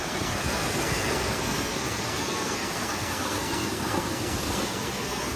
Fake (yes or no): yes